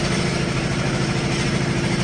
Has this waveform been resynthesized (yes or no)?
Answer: yes